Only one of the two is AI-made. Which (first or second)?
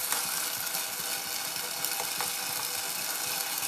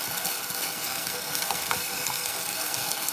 second